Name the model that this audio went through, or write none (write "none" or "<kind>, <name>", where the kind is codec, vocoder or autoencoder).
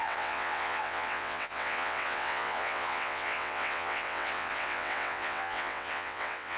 vocoder, WaveNeXt